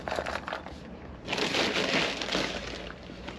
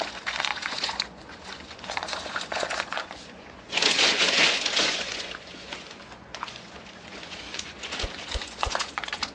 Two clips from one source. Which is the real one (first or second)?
first